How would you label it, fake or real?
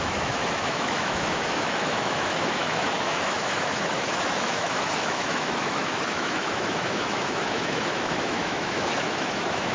fake